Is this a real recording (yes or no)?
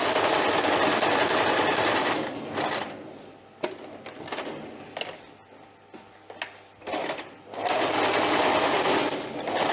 yes